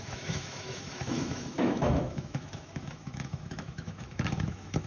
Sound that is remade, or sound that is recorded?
remade